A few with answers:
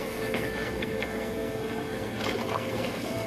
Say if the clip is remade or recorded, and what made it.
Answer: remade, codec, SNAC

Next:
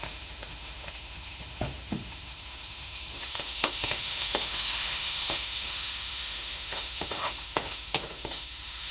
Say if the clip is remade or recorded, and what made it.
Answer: remade, autoencoder, DAC-VAE